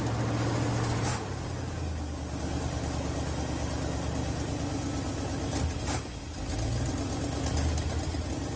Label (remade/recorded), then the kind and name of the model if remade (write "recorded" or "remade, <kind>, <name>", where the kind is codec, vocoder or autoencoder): recorded